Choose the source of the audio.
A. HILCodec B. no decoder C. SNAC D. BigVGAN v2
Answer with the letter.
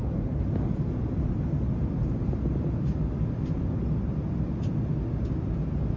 B